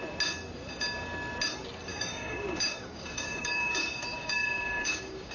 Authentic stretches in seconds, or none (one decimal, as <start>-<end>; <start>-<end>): 0.0-1.9